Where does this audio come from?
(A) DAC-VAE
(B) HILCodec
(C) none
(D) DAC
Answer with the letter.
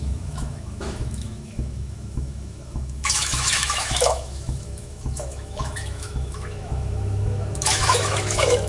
A